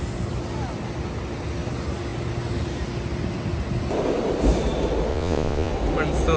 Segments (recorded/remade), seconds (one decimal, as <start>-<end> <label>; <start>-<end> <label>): 0.0-5.1 recorded; 5.1-5.7 remade; 5.7-6.4 recorded